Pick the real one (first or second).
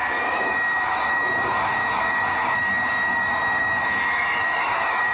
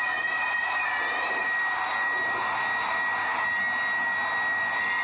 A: second